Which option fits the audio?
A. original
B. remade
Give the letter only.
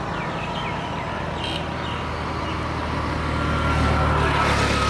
A